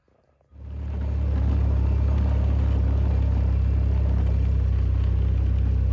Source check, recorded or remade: recorded